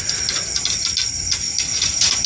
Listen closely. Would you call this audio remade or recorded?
recorded